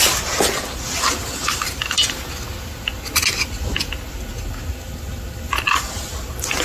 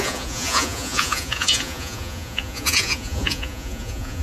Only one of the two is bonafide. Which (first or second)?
first